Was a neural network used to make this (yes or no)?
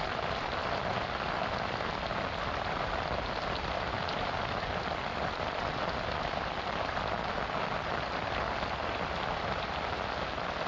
no